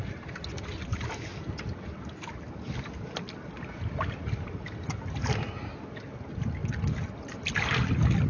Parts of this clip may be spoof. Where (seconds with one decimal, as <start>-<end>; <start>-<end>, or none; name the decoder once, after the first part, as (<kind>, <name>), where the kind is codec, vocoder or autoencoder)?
none